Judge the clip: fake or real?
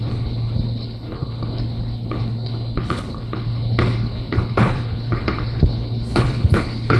fake